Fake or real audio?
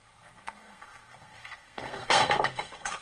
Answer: fake